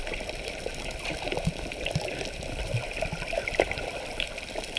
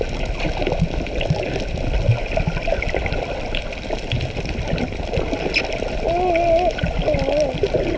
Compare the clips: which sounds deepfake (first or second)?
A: first